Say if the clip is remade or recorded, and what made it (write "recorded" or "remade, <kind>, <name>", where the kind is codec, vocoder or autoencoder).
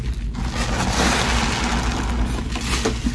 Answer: recorded